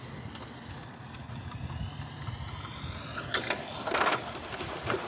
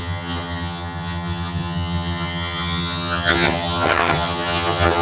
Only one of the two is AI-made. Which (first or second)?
second